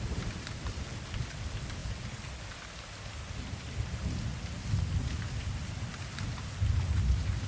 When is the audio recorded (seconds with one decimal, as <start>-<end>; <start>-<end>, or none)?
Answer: 0.0-1.8; 2.5-7.5